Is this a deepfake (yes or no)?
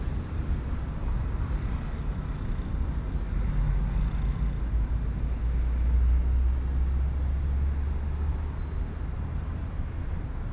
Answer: no